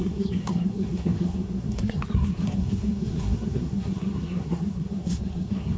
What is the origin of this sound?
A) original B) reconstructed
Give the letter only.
B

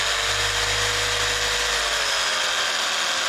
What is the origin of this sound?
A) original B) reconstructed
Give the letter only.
A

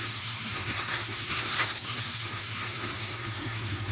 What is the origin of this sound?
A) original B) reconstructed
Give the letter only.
B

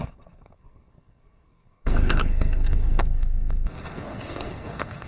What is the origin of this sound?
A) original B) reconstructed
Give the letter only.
B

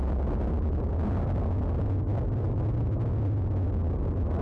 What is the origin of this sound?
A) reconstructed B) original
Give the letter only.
B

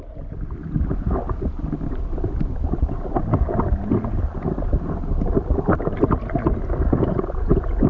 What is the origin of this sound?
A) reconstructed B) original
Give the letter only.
B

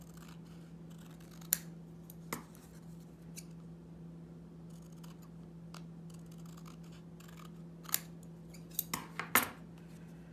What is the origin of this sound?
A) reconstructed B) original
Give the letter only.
B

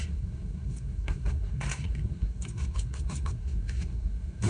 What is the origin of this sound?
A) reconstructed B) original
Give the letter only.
A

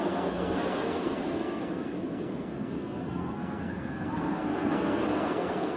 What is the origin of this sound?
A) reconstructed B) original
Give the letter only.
A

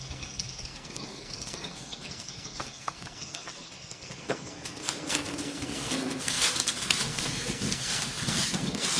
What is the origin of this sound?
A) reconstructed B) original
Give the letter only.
A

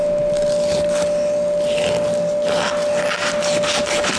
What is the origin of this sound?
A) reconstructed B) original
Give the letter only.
B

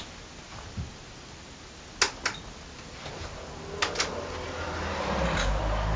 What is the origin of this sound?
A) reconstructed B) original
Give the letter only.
B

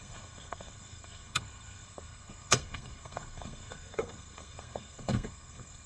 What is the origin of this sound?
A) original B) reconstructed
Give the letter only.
B